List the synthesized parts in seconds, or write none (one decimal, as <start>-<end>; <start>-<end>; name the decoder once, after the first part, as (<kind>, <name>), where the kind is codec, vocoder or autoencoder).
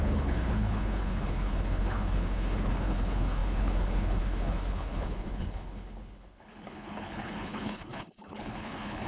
0.0-9.1 (codec, HILCodec)